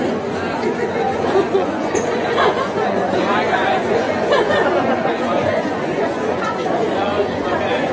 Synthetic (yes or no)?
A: yes